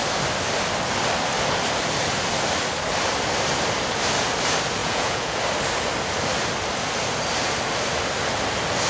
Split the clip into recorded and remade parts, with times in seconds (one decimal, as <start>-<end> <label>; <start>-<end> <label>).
0.0-4.8 recorded; 4.8-5.4 remade; 5.4-8.9 recorded